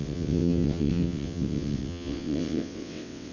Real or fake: fake